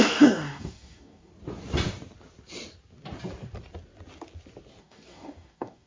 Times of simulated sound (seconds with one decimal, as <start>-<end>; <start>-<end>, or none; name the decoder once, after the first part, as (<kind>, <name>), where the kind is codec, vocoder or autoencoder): 0.0-1.3 (codec, DAC); 4.8-5.9